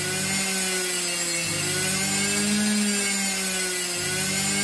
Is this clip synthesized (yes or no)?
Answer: no